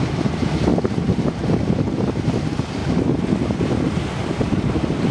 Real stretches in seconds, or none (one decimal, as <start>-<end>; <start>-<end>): 2.8-4.3